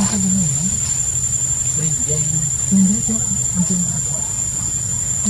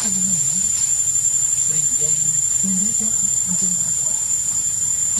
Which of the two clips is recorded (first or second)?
first